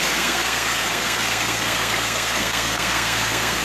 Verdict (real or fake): fake